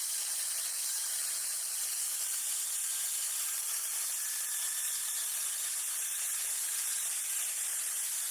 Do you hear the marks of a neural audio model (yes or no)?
yes